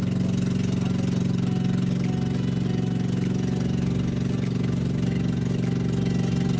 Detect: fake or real real